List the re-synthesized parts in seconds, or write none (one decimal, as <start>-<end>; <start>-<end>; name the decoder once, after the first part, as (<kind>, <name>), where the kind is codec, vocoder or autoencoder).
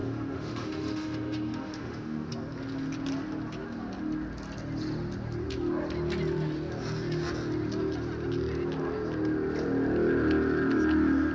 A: 0.0-2.3 (autoencoder, DAC-VAE)